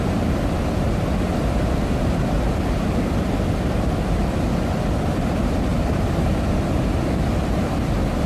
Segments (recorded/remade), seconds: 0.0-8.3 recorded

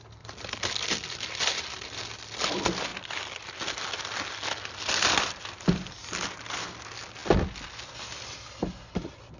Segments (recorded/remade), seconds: 0.0-9.4 recorded

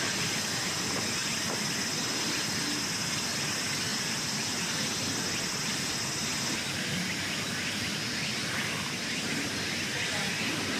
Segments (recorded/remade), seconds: 0.0-1.2 recorded; 1.2-1.7 remade; 1.7-10.8 recorded

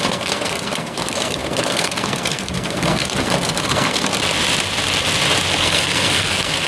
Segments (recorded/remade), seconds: 0.0-4.1 remade; 4.1-5.6 recorded; 5.6-6.7 remade

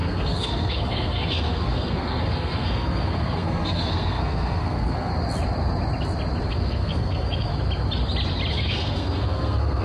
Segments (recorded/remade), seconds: 0.0-5.1 remade; 5.1-6.5 recorded; 6.5-7.5 remade; 7.5-8.5 recorded; 8.5-9.8 remade

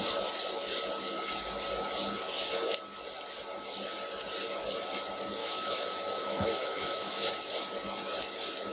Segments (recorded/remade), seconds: 0.0-5.4 recorded; 5.4-7.3 remade; 7.3-8.7 recorded

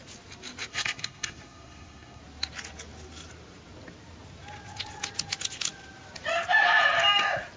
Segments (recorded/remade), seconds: 0.0-0.7 recorded; 0.7-2.2 remade; 2.2-7.6 recorded

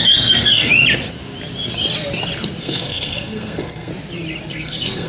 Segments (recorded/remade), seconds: 0.0-0.7 remade; 0.7-2.6 recorded; 2.6-3.9 remade; 3.9-4.5 recorded; 4.5-5.1 remade